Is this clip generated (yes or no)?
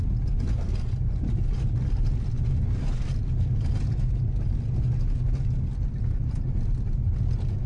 no